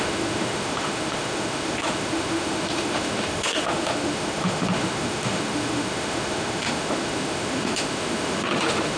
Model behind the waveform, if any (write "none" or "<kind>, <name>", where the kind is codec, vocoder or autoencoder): autoencoder, DAC-VAE